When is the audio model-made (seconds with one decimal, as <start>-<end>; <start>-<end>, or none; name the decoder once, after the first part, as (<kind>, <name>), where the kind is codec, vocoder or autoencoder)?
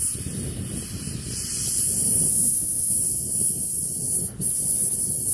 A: 2.3-2.9 (autoencoder, DAC-VAE)